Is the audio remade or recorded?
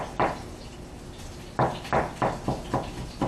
recorded